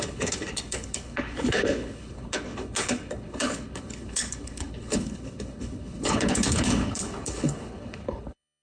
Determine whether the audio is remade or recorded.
remade